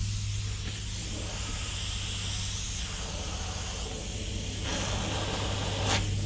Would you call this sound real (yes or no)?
yes